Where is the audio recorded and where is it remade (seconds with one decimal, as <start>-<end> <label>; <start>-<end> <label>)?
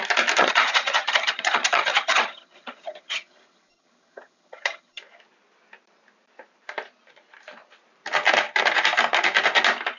0.0-0.4 recorded; 0.4-5.0 remade; 5.0-10.0 recorded